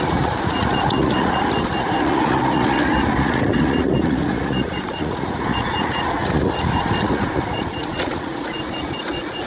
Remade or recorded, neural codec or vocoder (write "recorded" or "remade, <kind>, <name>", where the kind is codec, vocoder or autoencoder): remade, vocoder, Vocos